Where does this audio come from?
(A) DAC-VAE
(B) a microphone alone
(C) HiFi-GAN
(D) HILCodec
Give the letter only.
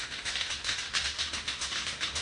A